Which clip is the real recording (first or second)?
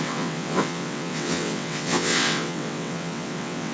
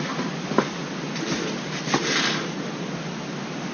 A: second